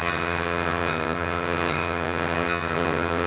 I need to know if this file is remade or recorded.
remade